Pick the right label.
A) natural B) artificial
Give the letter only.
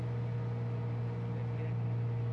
A